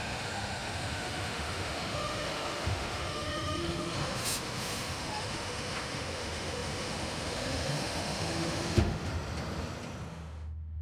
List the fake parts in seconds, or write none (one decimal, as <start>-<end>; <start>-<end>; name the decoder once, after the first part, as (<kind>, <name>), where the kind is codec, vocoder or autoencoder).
0.0-9.1 (autoencoder, DAC-VAE); 10.1-10.8